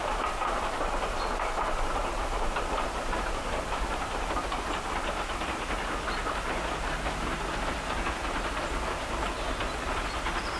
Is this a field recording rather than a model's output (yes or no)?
yes